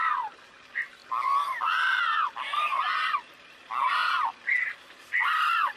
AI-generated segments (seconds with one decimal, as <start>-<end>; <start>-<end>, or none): none